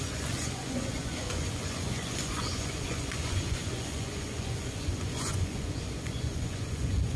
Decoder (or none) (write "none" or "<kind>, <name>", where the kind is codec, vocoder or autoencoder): vocoder, Vocos